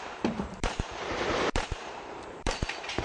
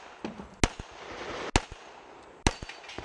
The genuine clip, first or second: second